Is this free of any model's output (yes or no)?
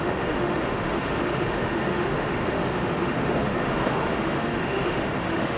no